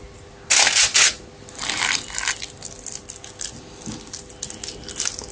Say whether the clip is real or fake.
real